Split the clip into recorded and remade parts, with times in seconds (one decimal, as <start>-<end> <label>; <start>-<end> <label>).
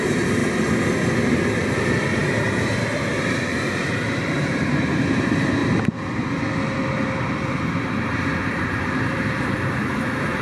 0.0-0.4 remade; 0.4-1.8 recorded; 1.8-5.6 remade; 5.6-7.2 recorded; 7.2-10.4 remade